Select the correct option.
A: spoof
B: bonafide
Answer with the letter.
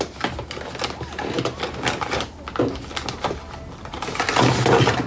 B